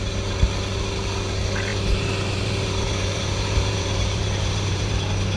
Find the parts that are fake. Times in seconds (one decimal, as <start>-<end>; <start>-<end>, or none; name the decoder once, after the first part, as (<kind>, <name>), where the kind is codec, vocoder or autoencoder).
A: 1.7-4.9 (vocoder, BigVGAN v2)